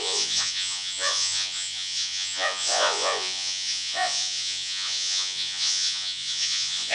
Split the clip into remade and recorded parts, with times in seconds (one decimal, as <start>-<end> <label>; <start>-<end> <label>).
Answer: 0.0-6.9 remade